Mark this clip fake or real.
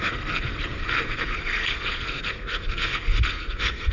fake